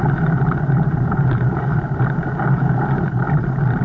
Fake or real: fake